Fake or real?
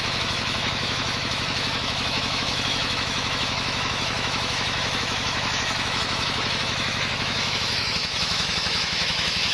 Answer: fake